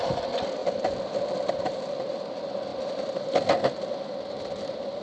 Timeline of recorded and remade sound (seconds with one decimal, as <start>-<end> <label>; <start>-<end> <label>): 0.0-0.6 recorded; 0.6-2.3 remade; 2.3-5.0 recorded